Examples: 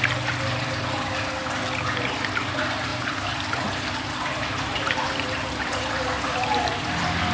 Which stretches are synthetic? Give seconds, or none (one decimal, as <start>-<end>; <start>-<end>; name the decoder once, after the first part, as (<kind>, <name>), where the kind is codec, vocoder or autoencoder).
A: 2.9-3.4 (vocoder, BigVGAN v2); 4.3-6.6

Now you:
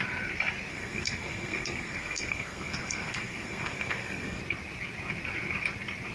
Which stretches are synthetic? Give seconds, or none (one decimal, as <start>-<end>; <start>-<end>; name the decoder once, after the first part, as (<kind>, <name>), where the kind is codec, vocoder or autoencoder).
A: 0.7-4.4 (codec, SNAC)

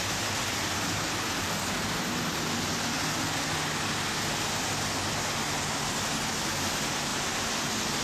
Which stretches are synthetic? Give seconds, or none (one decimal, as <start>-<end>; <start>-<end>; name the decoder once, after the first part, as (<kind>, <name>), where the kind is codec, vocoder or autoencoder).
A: none

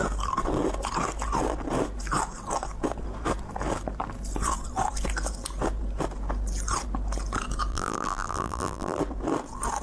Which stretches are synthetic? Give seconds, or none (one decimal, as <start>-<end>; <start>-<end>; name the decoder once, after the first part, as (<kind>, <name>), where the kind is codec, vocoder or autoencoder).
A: 7.7-9.0 (vocoder, BigVGAN v2)

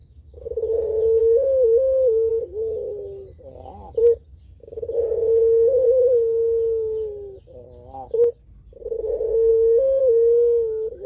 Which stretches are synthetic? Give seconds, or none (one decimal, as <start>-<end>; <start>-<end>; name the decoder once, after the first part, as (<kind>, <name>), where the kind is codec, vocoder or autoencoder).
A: 0.0-0.6 (codec, DAC); 4.3-4.9

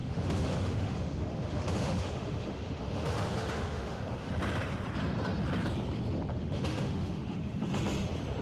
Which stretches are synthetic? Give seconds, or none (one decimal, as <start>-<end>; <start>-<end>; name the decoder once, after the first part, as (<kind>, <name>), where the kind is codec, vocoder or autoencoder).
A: 0.0-4.3 (autoencoder, DAC-VAE); 6.3-7.8